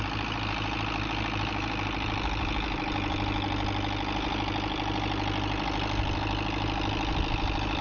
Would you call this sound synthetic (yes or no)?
no